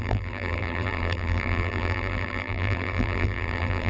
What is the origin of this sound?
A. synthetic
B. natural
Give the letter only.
A